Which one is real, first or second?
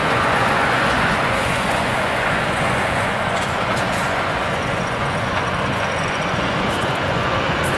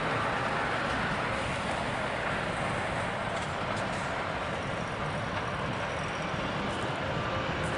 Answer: second